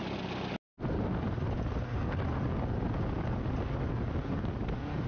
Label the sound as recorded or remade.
recorded